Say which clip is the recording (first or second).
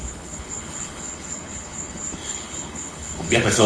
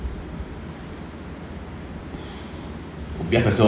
second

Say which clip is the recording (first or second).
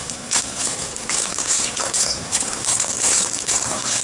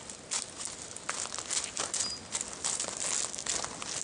second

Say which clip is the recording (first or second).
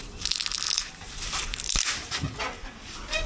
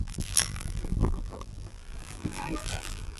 first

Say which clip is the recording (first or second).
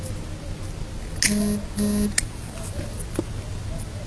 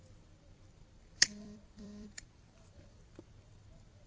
first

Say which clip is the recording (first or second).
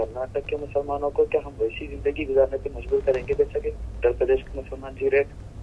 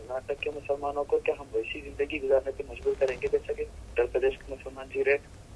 first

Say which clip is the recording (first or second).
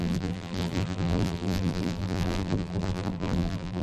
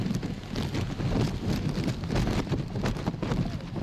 second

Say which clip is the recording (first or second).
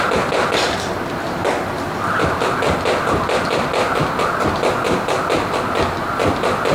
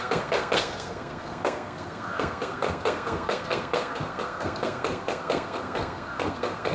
first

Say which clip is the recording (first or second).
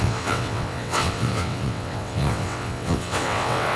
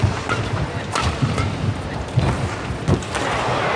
second